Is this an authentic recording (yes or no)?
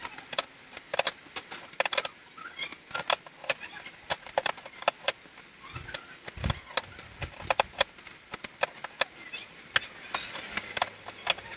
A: yes